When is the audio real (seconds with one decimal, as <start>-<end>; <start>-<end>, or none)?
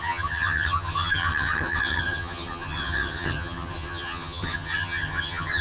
none